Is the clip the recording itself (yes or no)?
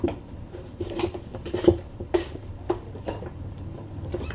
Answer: no